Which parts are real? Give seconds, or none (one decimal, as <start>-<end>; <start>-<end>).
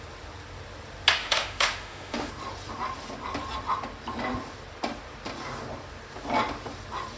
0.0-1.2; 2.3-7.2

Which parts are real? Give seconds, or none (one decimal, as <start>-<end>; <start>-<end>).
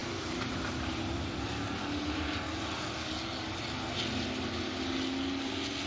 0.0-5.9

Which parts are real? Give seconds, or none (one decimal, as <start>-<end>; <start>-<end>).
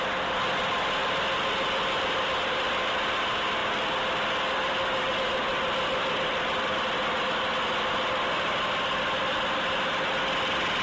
0.0-10.8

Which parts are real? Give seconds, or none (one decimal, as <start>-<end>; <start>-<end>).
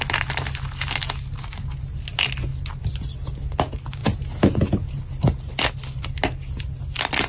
0.0-4.0; 5.0-7.3